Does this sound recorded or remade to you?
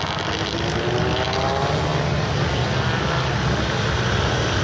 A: recorded